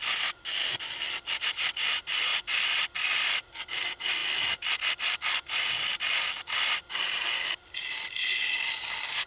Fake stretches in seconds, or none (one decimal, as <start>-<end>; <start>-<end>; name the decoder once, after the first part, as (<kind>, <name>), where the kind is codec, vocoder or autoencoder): none